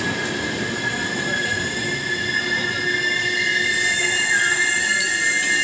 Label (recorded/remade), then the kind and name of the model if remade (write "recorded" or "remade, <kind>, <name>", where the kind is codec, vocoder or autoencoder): recorded